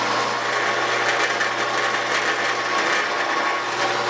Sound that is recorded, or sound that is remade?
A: recorded